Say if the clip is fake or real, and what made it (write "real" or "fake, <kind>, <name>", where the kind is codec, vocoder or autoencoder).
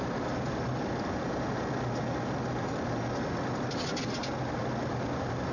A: real